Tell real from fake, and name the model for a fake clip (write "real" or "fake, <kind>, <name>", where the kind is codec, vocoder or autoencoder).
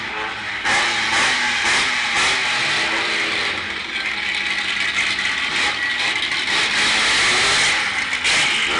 real